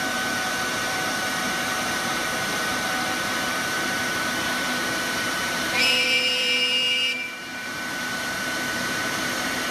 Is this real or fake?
fake